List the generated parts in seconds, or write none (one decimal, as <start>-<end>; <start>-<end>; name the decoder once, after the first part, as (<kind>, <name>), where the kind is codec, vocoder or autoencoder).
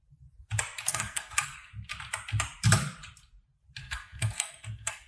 0.9-1.7 (codec, SNAC); 3.8-5.1